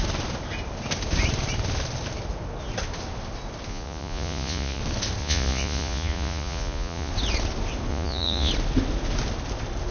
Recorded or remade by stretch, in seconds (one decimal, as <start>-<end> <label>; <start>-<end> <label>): 0.0-3.7 recorded; 3.7-4.8 remade; 4.8-5.2 recorded; 5.2-7.1 remade; 7.1-7.9 recorded; 7.9-8.5 remade; 8.5-9.9 recorded